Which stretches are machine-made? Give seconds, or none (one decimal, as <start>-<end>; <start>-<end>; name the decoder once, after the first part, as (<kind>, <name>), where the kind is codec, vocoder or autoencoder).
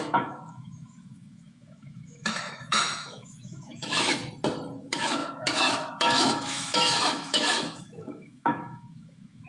0.0-4.2 (autoencoder, DAC-VAE); 4.8-9.5